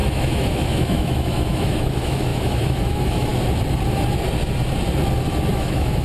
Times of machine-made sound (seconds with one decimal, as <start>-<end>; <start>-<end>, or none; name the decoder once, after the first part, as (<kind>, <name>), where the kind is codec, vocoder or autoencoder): 0.0-3.3 (autoencoder, DAC-VAE); 5.5-6.0